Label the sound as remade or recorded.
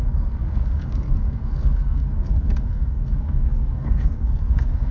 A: remade